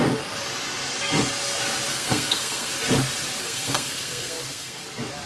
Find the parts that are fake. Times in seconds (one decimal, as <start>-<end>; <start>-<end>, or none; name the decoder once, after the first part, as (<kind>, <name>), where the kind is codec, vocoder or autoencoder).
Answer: 1.9-2.7 (codec, SNAC); 3.4-4.8